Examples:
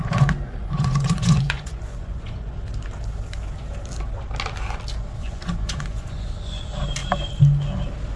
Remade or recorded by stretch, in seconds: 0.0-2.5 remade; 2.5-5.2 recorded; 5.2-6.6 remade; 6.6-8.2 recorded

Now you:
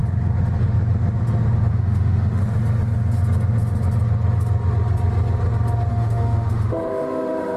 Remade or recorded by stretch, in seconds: 0.0-1.7 recorded; 1.7-2.4 remade; 2.4-5.9 recorded; 5.9-7.6 remade

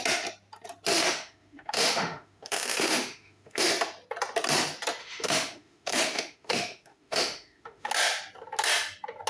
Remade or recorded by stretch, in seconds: 0.0-0.9 recorded; 0.9-3.7 remade; 3.7-5.0 recorded; 5.0-7.9 remade; 7.9-9.3 recorded

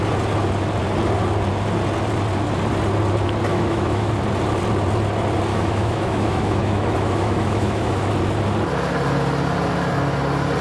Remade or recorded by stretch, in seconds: 0.0-3.5 recorded; 3.5-4.1 remade; 4.1-5.5 recorded; 5.5-8.1 remade; 8.1-10.6 recorded

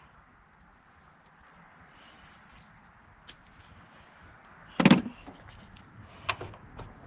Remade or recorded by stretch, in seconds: 0.0-7.1 recorded

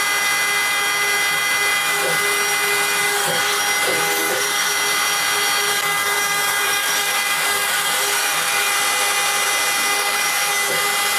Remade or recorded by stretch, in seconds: 0.0-3.0 recorded; 3.0-3.6 remade; 3.6-4.2 recorded; 4.2-4.7 remade; 4.7-5.7 recorded; 5.7-8.7 remade; 8.7-9.9 recorded; 9.9-10.5 remade; 10.5-11.2 recorded